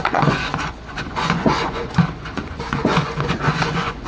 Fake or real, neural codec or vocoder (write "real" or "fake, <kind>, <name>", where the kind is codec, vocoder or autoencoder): fake, vocoder, Vocos